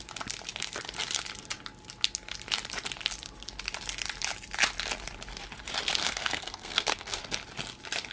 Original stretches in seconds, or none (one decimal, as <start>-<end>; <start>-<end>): 0.0-6.0; 7.2-8.1